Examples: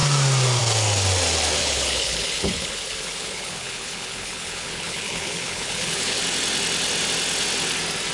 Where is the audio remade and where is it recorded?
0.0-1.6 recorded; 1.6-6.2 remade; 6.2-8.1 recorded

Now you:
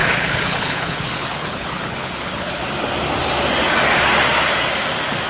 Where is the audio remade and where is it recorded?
0.0-2.6 remade; 2.6-5.3 recorded

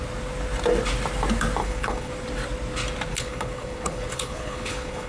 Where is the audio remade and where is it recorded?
0.0-1.6 recorded; 1.6-2.1 remade; 2.1-3.1 recorded; 3.1-5.1 remade